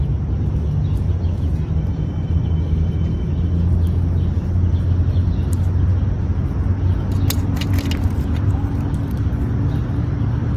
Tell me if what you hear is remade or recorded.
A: recorded